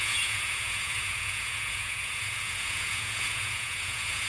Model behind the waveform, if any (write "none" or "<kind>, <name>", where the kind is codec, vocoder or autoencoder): vocoder, Vocos